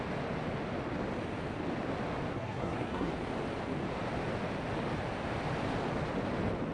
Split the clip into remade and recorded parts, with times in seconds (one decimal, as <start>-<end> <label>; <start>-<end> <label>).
0.0-2.3 recorded; 2.3-3.1 remade; 3.1-6.7 recorded